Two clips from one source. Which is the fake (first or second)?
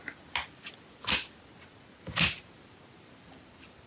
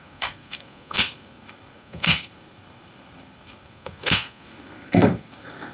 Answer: second